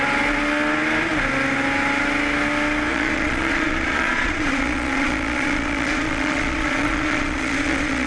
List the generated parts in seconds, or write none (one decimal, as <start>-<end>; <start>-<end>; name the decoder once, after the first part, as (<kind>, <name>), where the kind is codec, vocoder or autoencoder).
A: 2.9-8.1 (vocoder, Vocos)